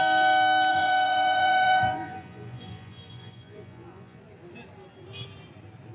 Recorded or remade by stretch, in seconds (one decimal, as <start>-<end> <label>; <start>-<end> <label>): 0.0-0.7 recorded; 0.7-4.2 remade; 4.2-5.9 recorded